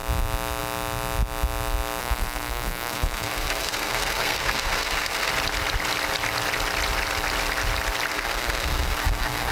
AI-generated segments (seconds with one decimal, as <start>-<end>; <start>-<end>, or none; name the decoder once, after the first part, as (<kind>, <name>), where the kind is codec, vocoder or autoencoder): 2.0-5.3 (codec, SNAC); 8.1-9.5